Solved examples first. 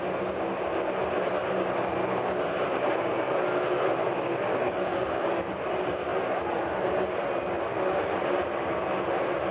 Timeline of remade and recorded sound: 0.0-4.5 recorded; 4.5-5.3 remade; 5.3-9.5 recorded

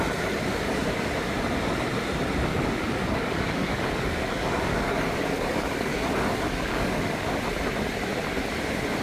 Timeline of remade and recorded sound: 0.0-0.5 recorded; 0.5-1.1 remade; 1.1-2.5 recorded; 2.5-7.4 remade; 7.4-9.0 recorded